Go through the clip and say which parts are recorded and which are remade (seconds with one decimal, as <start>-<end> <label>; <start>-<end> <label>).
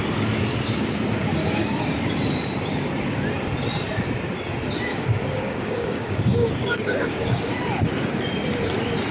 0.0-1.3 recorded; 1.3-1.9 remade; 1.9-4.9 recorded; 4.9-7.5 remade; 7.5-9.1 recorded